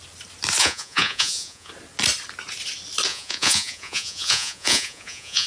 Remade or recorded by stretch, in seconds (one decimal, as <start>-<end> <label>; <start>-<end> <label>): 0.0-0.6 recorded; 0.6-1.7 remade; 1.7-3.1 recorded; 3.1-5.5 remade